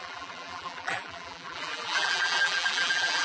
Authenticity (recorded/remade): remade